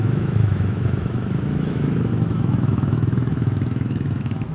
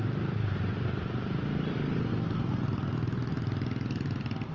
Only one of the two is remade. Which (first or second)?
first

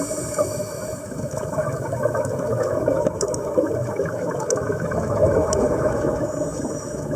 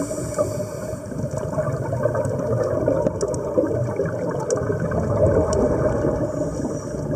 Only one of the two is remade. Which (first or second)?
first